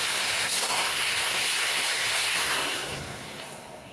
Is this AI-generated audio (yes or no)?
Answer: yes